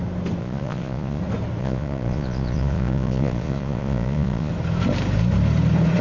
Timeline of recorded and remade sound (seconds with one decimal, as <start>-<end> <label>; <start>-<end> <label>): 0.0-0.4 recorded; 0.4-1.2 remade; 1.2-1.6 recorded; 1.6-4.5 remade; 4.5-6.0 recorded